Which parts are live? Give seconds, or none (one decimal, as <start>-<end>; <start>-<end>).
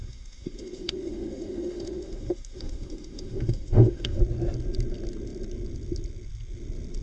4.2-7.0